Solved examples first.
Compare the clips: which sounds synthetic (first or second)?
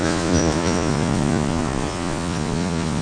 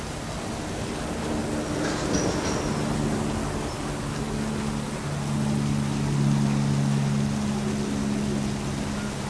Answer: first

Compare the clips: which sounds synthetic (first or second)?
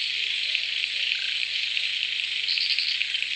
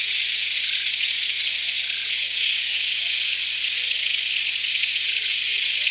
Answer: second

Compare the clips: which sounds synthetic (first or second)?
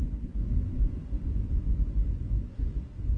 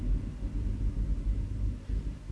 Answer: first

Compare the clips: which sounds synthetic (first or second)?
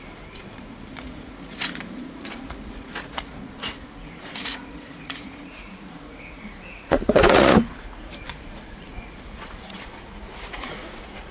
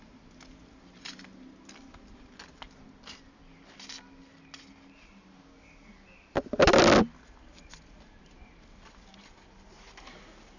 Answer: first